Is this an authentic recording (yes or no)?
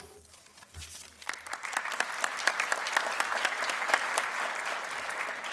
yes